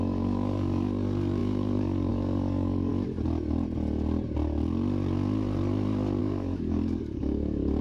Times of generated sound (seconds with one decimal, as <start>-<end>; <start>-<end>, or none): 0.0-2.9; 6.2-7.8